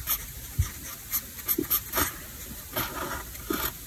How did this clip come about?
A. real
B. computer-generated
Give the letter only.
A